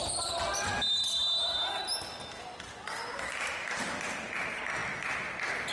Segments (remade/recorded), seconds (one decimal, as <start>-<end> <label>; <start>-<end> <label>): 0.0-5.7 recorded